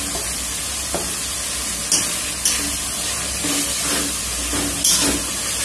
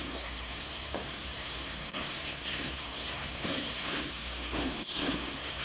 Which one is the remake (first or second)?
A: second